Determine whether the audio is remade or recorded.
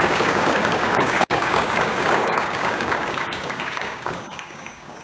remade